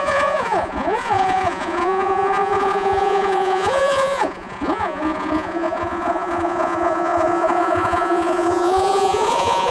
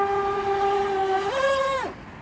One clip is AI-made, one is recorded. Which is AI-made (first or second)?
first